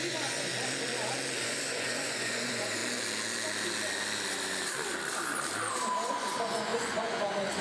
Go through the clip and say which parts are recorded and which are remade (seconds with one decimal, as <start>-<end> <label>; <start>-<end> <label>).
0.0-0.5 remade; 0.5-1.4 recorded; 1.4-2.8 remade; 2.8-6.1 recorded; 6.1-7.6 remade